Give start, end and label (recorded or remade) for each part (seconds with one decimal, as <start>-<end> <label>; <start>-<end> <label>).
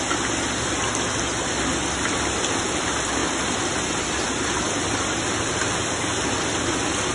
0.0-7.1 recorded